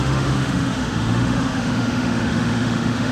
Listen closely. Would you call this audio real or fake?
fake